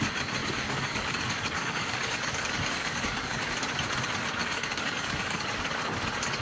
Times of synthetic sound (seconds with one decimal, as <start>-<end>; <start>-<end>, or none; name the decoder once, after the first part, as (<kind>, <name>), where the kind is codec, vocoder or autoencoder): 0.4-3.4 (codec, DAC); 4.4-6.0